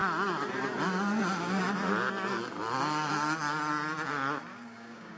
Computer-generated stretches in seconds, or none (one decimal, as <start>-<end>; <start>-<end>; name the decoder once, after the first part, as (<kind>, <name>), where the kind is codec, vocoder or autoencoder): 4.5-5.2 (codec, DAC)